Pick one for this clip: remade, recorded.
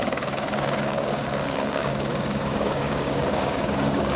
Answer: remade